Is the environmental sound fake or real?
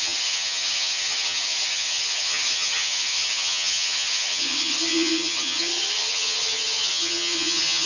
fake